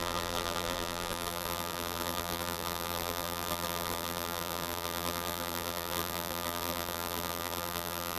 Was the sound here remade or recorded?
remade